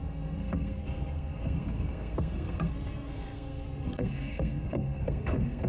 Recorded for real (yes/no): no